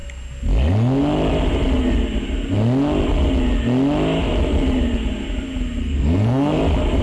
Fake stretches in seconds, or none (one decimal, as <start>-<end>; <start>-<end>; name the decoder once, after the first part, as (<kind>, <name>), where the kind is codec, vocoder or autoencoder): 5.8-6.6 (codec, SNAC)